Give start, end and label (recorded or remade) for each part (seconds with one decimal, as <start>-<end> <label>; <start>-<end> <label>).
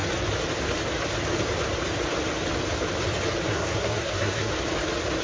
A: 0.0-3.5 recorded; 3.5-4.5 remade; 4.5-5.2 recorded